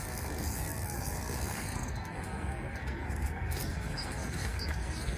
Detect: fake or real fake